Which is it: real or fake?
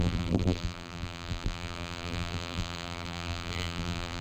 fake